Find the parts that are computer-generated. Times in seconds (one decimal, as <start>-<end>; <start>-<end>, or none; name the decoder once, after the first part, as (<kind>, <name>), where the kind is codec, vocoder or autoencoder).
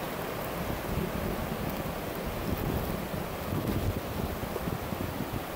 none